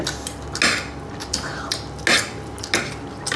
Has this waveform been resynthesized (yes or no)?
no